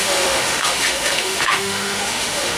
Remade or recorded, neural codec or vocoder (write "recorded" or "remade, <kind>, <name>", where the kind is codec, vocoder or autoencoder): remade, autoencoder, DAC-VAE